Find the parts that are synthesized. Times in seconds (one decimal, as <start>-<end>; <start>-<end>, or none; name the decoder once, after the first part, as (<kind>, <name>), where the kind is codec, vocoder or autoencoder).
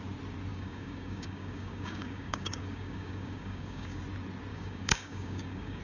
0.5-4.0 (codec, DAC); 4.5-5.8